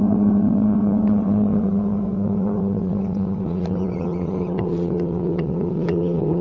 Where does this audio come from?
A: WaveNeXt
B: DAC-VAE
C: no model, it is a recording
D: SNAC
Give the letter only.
A